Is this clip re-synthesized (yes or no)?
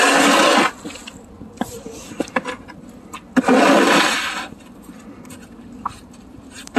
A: no